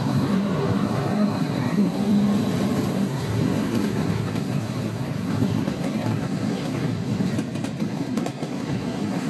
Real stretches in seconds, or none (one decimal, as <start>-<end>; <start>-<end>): 2.1-2.9; 7.3-7.8